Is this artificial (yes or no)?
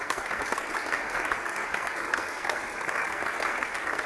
yes